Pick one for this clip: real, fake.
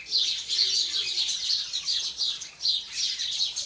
real